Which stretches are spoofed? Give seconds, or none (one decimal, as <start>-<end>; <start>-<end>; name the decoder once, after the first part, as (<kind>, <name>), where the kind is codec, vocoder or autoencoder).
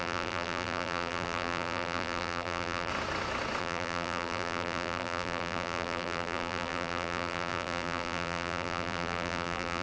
0.0-2.9 (vocoder, BigVGAN v2); 3.6-9.8